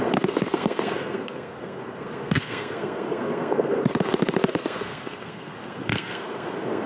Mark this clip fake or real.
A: fake